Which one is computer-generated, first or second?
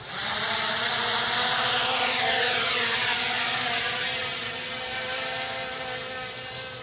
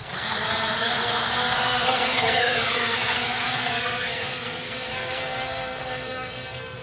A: second